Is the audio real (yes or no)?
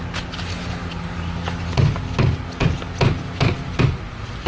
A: yes